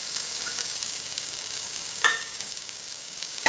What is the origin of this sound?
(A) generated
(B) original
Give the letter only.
A